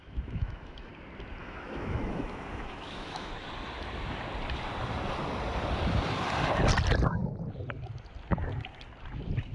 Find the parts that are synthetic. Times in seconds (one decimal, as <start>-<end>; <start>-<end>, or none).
0.0-0.9; 1.4-3.3